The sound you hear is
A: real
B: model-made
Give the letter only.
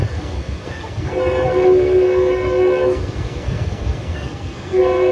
B